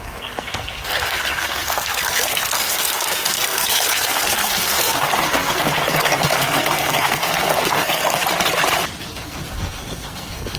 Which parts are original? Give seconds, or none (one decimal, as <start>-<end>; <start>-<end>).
8.2-9.0